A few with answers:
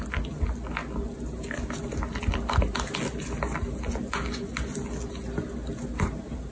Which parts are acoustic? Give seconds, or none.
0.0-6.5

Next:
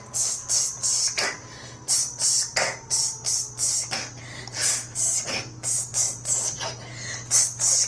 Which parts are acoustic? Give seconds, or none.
0.0-7.9

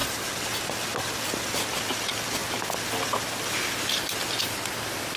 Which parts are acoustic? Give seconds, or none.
0.0-0.5; 2.4-3.9

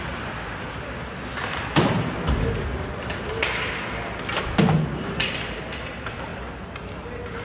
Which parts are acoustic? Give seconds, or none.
0.0-7.4

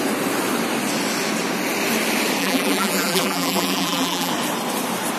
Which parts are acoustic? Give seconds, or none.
0.0-2.4; 4.3-5.2

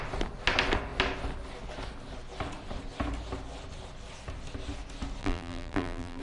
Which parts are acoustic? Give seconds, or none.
0.0-5.2

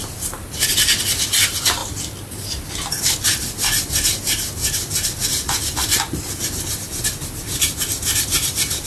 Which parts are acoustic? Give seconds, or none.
0.0-8.9

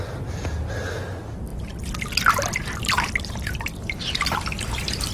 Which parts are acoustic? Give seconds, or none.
0.0-5.1